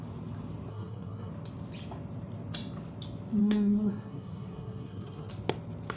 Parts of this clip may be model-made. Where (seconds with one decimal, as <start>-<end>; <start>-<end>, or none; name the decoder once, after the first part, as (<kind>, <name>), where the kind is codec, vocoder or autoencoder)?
0.7-1.3 (codec, SNAC); 3.4-5.3